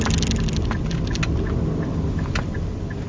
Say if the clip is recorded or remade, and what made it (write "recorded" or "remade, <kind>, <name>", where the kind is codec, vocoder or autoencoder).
recorded